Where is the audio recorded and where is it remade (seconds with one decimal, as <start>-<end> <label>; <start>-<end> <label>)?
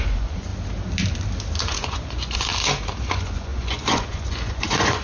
0.0-0.5 remade; 0.5-1.7 recorded; 1.7-2.5 remade; 2.5-3.0 recorded; 3.0-5.0 remade